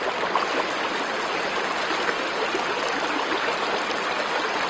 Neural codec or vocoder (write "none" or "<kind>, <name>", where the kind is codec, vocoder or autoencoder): none